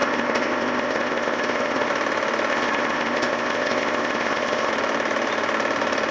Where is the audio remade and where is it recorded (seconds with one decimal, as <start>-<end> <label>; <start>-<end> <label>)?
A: 0.0-1.9 remade; 1.9-2.5 recorded; 2.5-4.7 remade; 4.7-6.1 recorded